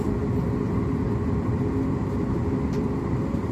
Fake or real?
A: real